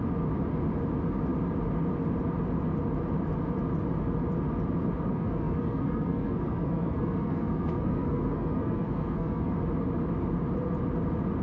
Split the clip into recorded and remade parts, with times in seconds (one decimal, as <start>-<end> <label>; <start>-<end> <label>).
0.0-5.1 recorded; 5.1-9.5 remade; 9.5-11.4 recorded

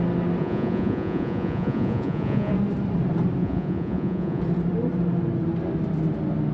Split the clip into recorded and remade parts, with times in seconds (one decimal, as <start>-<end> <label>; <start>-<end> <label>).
0.0-0.4 recorded; 0.4-2.5 remade; 2.5-3.4 recorded; 3.4-4.4 remade; 4.4-6.5 recorded

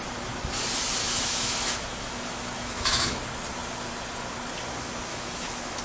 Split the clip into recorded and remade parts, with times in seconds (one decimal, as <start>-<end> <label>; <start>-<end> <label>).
0.0-1.0 recorded; 1.0-3.2 remade; 3.2-5.1 recorded; 5.1-5.8 remade

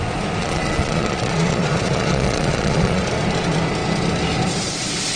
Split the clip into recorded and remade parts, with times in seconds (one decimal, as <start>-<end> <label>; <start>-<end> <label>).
0.0-0.4 recorded; 0.4-3.0 remade; 3.0-5.2 recorded

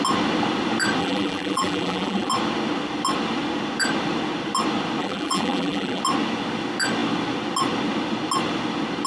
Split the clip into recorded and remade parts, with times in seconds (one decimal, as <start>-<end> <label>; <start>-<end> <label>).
0.0-1.0 recorded; 1.0-2.3 remade; 2.3-5.0 recorded; 5.0-6.0 remade; 6.0-9.1 recorded

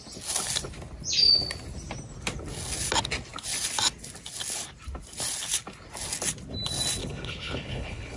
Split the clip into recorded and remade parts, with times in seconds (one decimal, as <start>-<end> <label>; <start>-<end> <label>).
0.0-7.0 recorded; 7.0-8.2 remade